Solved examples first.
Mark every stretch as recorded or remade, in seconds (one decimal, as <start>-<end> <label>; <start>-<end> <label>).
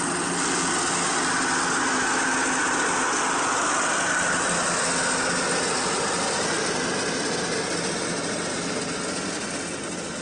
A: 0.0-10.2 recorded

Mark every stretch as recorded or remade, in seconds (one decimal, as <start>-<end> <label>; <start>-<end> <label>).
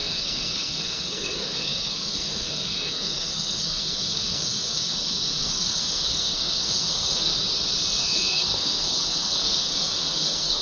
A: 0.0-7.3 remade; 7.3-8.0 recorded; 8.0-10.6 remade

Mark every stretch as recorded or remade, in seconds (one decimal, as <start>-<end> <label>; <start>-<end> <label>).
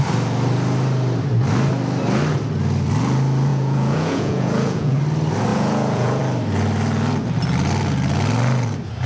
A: 0.0-3.5 recorded; 3.5-5.0 remade; 5.0-5.5 recorded; 5.5-6.2 remade; 6.2-9.1 recorded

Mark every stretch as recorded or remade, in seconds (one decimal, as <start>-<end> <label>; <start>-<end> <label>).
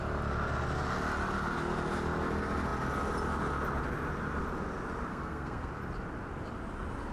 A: 0.0-5.1 recorded; 5.1-5.7 remade; 5.7-7.1 recorded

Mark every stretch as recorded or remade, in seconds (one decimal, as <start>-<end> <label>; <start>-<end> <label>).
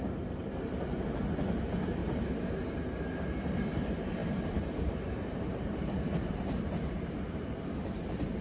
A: 0.0-2.0 remade; 2.0-3.6 recorded; 3.6-8.4 remade